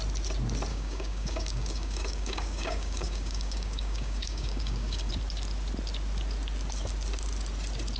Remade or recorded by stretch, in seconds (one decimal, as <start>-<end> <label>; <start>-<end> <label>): 0.0-0.7 recorded; 0.7-5.1 remade; 5.1-8.0 recorded